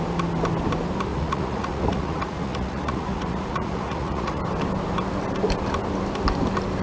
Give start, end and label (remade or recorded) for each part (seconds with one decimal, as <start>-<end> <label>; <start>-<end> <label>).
0.0-1.1 recorded; 1.1-4.4 remade; 4.4-6.8 recorded